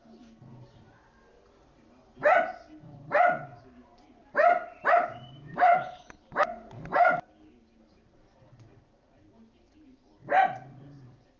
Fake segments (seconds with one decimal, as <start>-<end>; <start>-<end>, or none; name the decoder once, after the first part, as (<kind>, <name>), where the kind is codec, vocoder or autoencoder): none